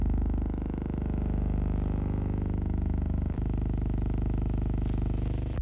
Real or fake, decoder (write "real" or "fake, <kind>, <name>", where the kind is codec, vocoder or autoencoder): fake, autoencoder, DAC-VAE